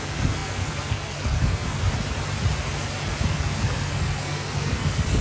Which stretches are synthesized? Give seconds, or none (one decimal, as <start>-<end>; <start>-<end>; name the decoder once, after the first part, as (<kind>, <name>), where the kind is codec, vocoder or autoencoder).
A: 0.0-1.8 (codec, SNAC); 3.3-5.2